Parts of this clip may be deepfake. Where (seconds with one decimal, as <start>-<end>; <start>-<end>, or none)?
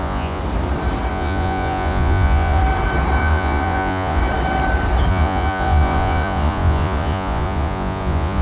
0.0-0.4; 1.1-2.6; 3.2-4.2; 5.1-8.4